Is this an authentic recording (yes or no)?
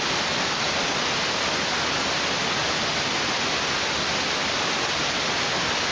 yes